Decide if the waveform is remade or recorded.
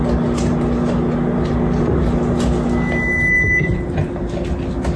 recorded